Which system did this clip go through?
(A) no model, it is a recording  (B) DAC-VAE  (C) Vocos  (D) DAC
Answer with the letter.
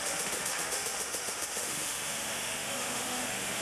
B